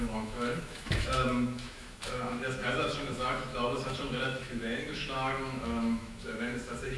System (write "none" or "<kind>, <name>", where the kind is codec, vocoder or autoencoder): autoencoder, DAC-VAE